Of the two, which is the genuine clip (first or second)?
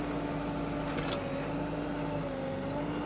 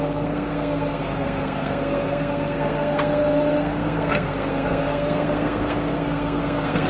first